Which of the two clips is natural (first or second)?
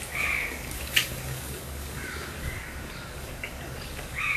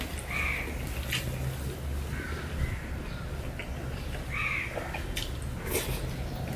second